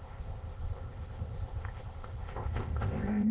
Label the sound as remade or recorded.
remade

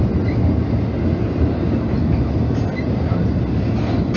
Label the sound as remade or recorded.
recorded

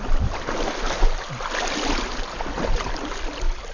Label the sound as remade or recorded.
recorded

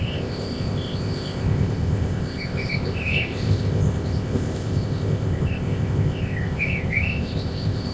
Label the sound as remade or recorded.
remade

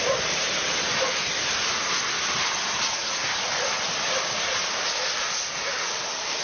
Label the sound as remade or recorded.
recorded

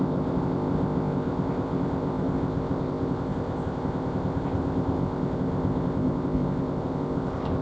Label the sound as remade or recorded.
remade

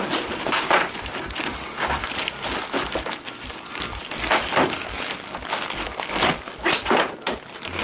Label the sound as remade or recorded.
recorded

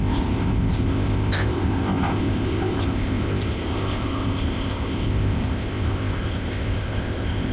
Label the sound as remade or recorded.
remade